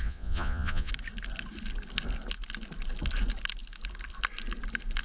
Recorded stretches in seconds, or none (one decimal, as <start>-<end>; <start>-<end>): 0.9-5.0